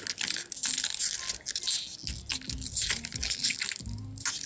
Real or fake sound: real